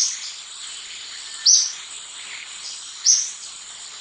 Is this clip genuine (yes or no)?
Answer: yes